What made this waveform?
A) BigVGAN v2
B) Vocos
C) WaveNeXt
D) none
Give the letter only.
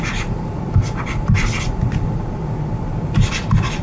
A